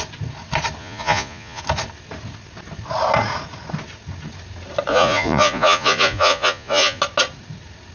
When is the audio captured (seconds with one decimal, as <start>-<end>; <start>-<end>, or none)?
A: 0.0-0.8; 1.6-4.9; 7.0-7.9